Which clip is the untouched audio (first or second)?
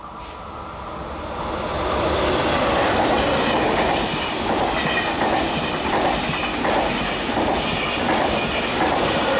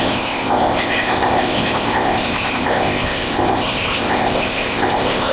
first